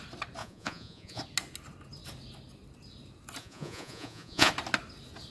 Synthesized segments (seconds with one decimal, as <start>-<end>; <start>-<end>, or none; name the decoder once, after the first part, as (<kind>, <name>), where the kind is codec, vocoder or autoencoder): 0.4-1.2 (vocoder, Vocos); 3.4-4.5